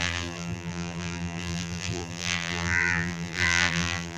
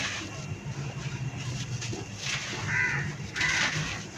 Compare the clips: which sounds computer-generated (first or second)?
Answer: first